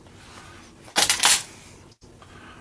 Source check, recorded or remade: recorded